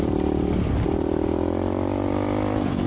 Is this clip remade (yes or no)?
no